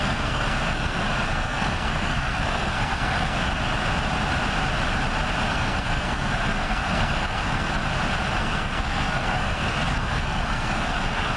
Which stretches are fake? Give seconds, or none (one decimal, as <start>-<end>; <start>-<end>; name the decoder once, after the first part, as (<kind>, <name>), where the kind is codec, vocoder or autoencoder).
0.0-3.4 (codec, SNAC); 5.5-7.8; 8.4-11.4